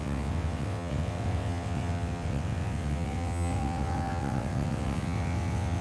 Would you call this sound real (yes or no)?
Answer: no